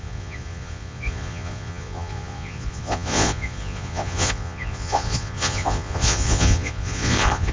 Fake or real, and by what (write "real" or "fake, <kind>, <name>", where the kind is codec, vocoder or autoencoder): fake, vocoder, Vocos